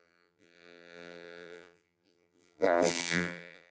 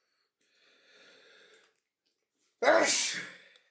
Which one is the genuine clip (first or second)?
second